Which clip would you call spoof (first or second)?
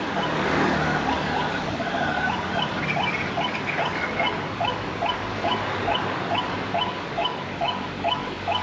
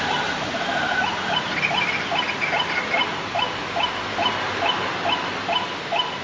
first